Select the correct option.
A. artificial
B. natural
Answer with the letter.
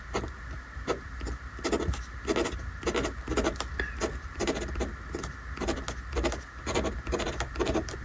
B